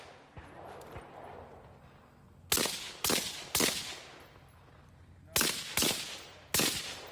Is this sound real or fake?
real